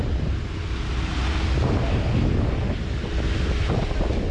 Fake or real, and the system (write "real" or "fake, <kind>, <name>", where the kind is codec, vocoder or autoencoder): real